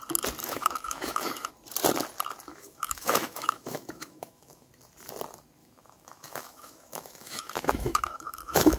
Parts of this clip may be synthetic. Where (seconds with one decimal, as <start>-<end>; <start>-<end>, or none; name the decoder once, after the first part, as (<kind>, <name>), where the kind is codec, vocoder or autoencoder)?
0.4-1.5 (autoencoder, DAC-VAE); 2.5-4.7; 5.6-8.8